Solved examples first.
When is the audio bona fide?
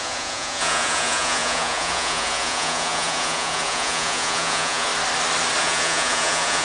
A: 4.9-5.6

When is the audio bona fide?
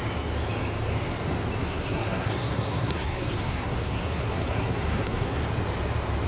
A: 0.0-1.6; 5.4-6.3